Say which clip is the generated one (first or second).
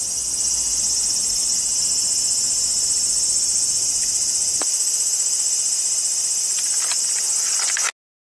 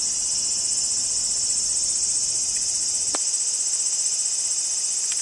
second